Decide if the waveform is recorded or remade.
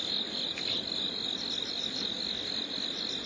recorded